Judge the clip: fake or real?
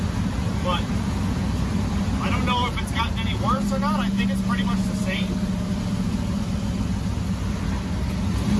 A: real